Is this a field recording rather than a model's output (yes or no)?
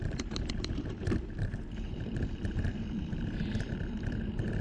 no